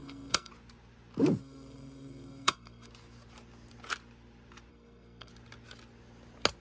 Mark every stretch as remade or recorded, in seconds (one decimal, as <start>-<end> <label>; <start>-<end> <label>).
0.0-0.5 remade; 0.5-1.4 recorded; 1.4-2.9 remade; 2.9-4.7 recorded; 4.7-5.3 remade; 5.3-6.6 recorded